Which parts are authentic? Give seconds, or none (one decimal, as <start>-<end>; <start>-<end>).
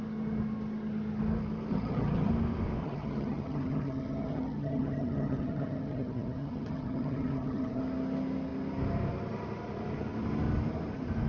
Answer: 0.0-1.7; 2.3-2.8; 7.8-11.3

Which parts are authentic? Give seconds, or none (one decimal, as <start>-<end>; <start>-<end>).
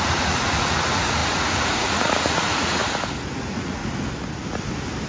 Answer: 2.8-3.4; 3.8-5.1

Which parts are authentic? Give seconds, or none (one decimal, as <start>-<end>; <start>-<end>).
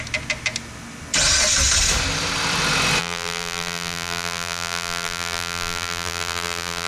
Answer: 0.0-3.0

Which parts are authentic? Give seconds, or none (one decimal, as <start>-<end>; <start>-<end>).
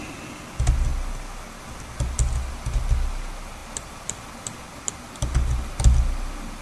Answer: 0.0-6.6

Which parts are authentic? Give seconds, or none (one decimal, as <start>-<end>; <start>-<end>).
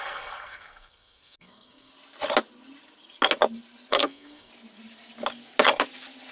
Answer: 1.9-3.9; 4.5-6.3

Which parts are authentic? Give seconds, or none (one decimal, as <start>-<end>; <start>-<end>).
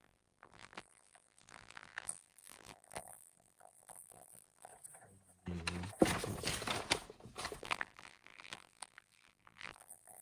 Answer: 4.7-7.6